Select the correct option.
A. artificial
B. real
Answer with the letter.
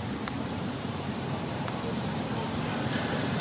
A